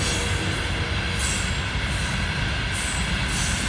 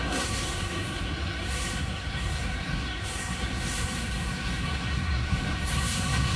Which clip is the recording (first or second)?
first